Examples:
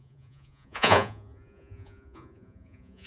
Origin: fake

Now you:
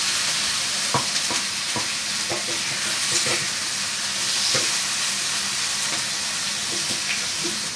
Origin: real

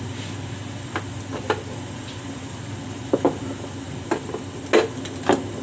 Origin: real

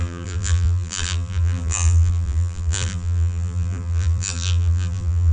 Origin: fake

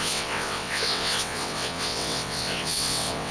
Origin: fake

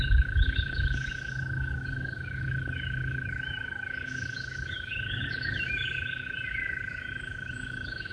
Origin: fake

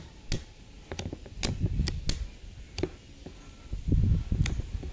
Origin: real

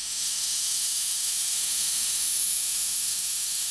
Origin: fake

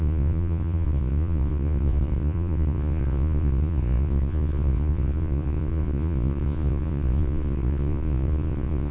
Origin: fake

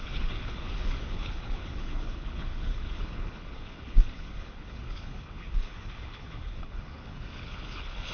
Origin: fake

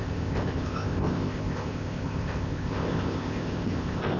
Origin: fake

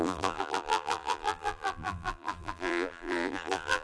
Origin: fake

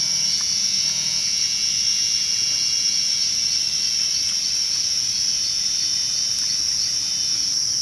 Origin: real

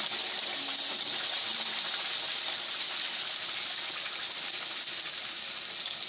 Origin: fake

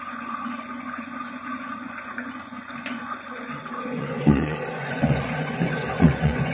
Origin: fake